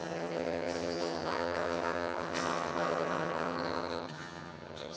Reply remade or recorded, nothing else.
remade